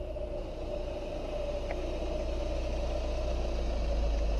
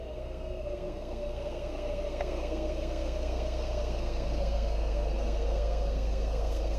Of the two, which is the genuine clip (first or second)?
first